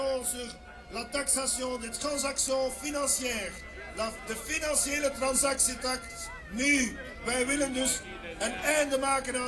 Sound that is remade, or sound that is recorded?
recorded